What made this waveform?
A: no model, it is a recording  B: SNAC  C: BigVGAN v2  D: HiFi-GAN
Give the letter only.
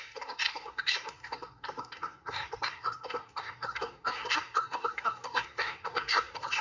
B